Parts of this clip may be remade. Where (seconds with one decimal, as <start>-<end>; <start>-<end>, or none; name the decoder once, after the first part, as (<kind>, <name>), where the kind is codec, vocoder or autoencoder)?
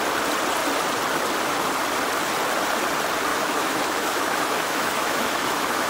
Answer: 3.3-5.9 (autoencoder, DAC-VAE)